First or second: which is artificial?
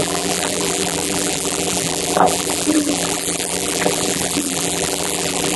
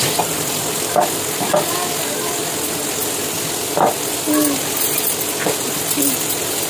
first